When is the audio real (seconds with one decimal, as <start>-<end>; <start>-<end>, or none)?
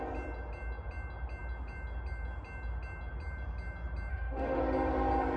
0.0-4.1; 4.6-5.4